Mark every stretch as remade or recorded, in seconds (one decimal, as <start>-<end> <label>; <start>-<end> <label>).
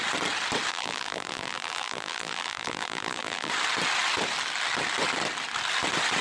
0.0-0.7 recorded; 0.7-3.5 remade; 3.5-6.2 recorded